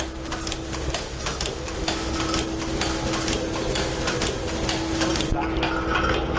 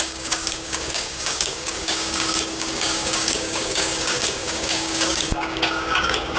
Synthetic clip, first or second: second